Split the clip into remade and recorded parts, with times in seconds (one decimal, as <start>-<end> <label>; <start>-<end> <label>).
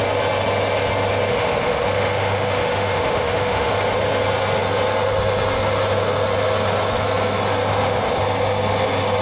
0.0-1.3 recorded; 1.3-3.7 remade; 3.7-7.7 recorded; 7.7-8.2 remade; 8.2-9.2 recorded